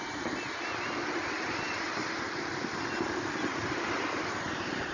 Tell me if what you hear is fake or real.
real